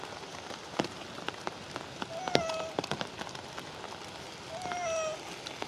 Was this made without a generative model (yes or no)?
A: yes